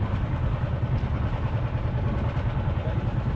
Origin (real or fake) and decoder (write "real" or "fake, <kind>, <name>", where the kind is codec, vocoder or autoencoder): real